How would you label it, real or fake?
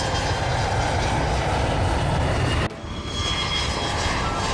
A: real